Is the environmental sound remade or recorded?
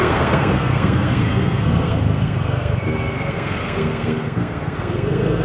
remade